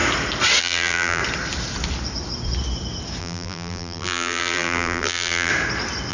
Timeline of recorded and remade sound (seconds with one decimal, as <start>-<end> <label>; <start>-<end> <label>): 0.0-0.6 recorded; 0.6-1.2 remade; 1.2-3.2 recorded; 3.2-5.5 remade; 5.5-6.1 recorded

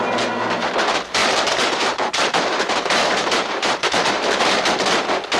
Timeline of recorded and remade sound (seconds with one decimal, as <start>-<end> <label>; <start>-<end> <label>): 0.0-1.2 recorded; 1.2-4.4 remade; 4.4-5.4 recorded

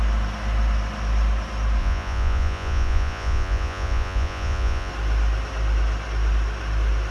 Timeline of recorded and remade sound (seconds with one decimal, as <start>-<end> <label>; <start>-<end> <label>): 0.0-1.8 recorded; 1.8-4.9 remade; 4.9-7.1 recorded

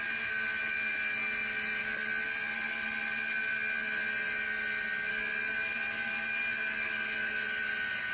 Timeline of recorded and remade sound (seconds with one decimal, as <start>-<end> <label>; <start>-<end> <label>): 0.0-8.1 recorded

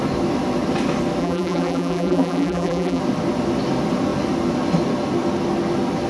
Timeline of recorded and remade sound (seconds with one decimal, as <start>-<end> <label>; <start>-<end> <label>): 0.0-1.2 recorded; 1.2-3.0 remade; 3.0-6.1 recorded

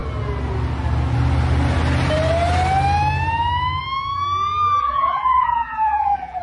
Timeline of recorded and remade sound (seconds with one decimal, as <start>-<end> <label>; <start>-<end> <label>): 0.0-4.8 recorded; 4.8-6.4 remade